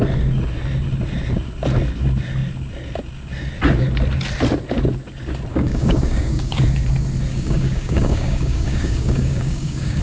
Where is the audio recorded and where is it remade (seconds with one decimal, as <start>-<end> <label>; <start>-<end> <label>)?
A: 0.0-5.5 recorded; 5.5-6.6 remade; 6.6-7.3 recorded; 7.3-10.0 remade